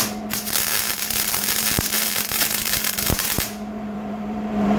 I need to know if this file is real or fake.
fake